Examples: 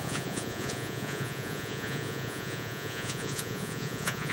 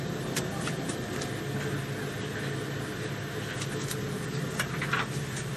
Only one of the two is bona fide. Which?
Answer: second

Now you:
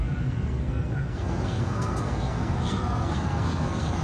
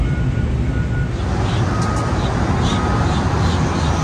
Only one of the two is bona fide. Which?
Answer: second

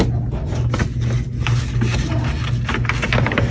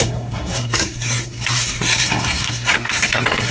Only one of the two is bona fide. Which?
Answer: first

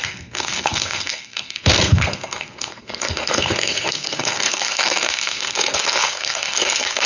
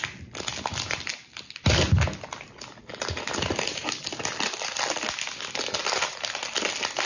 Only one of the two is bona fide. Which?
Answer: second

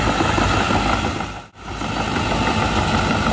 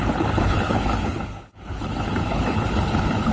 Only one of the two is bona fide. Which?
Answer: first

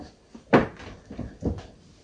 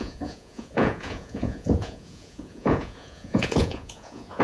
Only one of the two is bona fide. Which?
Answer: first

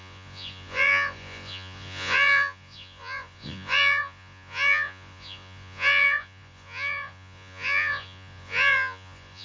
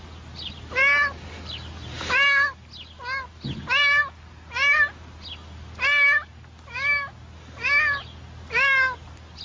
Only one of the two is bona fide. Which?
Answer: second